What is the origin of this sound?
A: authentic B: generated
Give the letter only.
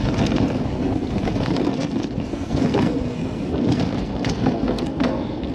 B